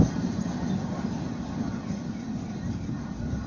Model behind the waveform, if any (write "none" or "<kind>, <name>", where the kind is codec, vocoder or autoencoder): none